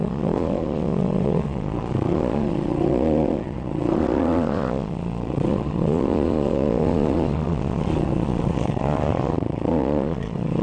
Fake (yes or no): yes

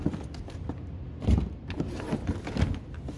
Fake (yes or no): no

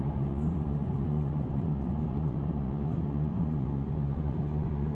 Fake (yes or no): yes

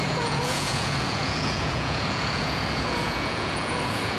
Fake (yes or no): yes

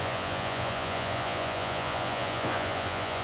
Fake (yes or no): yes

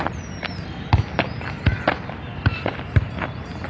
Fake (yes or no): no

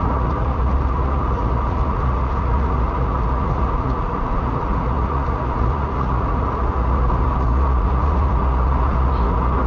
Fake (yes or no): yes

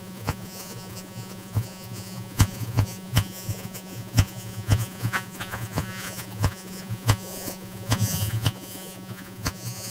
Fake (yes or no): yes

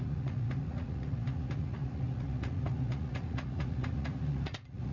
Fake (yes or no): yes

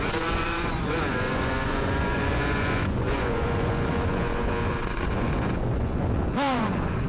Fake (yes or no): yes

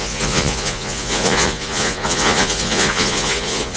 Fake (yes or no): yes